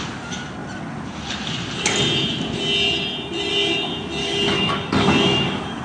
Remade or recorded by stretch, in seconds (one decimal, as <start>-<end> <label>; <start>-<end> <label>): 0.0-4.2 recorded; 4.2-5.8 remade